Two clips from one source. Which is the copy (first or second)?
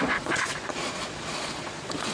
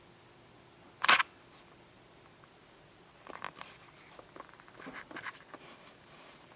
first